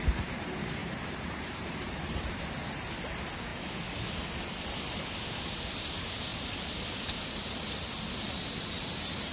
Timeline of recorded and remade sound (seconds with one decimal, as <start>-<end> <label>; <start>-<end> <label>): 0.0-0.8 recorded; 0.8-2.4 remade; 2.4-9.3 recorded